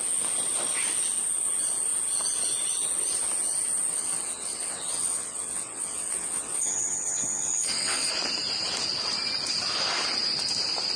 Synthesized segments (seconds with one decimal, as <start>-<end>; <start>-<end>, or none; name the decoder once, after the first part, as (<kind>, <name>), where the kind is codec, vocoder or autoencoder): 3.9-8.1 (vocoder, WaveNeXt)